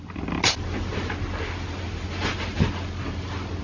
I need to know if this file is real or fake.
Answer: real